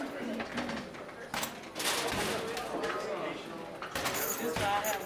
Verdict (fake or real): real